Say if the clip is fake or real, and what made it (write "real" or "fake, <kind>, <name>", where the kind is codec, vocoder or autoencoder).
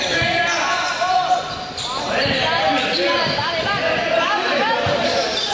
real